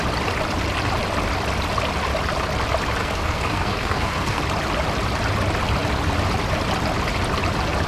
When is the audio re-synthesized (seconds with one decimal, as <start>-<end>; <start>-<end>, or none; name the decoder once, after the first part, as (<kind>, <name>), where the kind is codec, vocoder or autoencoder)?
3.0-4.4 (codec, SNAC)